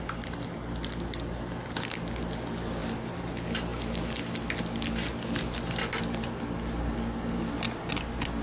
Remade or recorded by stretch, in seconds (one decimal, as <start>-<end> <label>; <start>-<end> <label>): 0.0-8.4 recorded